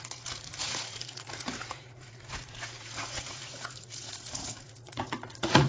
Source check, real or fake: fake